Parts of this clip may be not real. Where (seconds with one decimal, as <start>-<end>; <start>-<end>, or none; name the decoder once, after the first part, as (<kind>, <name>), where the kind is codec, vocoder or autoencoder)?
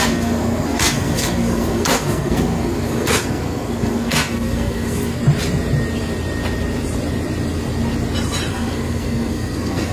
0.0-5.2 (codec, SNAC); 8.5-9.9